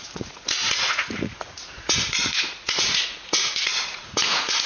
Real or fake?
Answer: fake